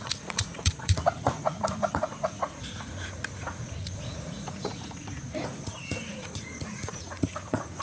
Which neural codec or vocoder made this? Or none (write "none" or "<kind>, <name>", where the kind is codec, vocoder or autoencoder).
vocoder, Vocos